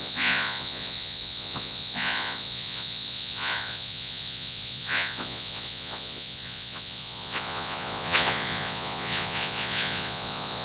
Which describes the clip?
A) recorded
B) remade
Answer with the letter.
B